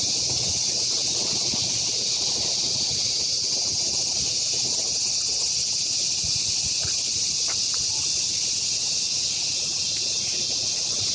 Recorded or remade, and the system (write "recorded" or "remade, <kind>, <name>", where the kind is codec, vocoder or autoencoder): recorded